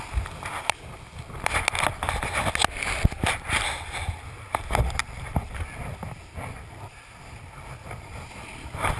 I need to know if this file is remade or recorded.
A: recorded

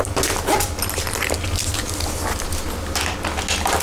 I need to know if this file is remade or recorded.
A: recorded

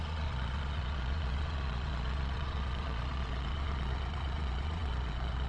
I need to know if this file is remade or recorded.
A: remade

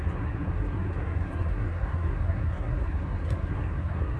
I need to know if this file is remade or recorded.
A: remade